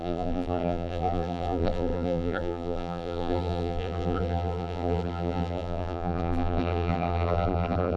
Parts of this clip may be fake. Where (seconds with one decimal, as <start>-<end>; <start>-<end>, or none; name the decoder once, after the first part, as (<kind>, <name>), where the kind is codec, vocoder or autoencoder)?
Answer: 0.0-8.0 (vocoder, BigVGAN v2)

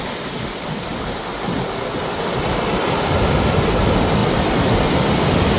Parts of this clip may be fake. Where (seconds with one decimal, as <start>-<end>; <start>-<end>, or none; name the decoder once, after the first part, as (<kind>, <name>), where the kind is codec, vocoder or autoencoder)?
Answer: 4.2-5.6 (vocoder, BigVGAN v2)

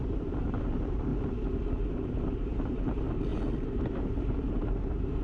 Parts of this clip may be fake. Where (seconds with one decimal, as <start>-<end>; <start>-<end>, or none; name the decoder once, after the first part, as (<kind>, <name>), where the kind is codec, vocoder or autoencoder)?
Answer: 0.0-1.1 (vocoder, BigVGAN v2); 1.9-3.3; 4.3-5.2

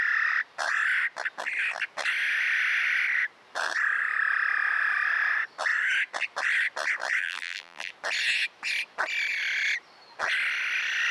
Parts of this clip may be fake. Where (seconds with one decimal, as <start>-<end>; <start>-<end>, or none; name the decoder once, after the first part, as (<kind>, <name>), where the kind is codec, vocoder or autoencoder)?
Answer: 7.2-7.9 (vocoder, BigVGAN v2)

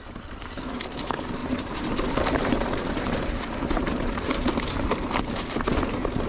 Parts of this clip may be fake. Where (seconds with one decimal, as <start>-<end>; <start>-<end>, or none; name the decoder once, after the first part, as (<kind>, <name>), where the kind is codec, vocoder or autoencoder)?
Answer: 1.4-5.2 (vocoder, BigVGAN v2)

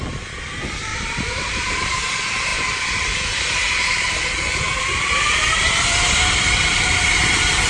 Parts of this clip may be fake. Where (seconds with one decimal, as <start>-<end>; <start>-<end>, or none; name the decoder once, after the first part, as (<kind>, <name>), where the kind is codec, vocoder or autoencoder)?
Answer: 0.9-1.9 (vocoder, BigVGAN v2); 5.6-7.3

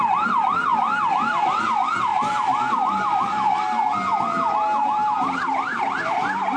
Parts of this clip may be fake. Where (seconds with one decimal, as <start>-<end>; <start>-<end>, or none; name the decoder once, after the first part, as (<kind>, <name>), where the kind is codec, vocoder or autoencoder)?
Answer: none